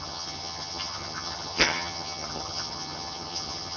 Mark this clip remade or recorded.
remade